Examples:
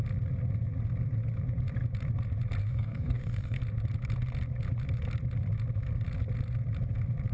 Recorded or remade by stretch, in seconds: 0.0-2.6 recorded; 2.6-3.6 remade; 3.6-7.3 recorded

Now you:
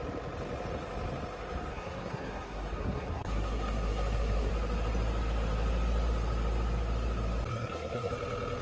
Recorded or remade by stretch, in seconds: 0.0-1.7 recorded; 1.7-4.5 remade; 4.5-7.5 recorded; 7.5-8.1 remade; 8.1-8.6 recorded